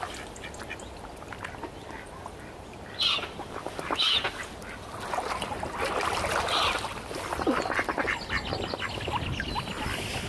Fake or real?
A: real